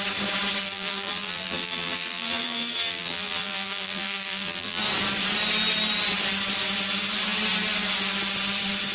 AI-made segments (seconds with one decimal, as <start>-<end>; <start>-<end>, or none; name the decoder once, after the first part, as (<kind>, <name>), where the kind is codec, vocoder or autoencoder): 0.6-4.8 (vocoder, BigVGAN v2)